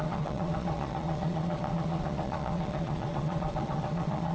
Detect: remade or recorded remade